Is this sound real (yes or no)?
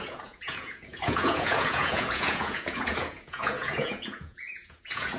no